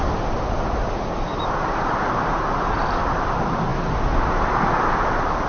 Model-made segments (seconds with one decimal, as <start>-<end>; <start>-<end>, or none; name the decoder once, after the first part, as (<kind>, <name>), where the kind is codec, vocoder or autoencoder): none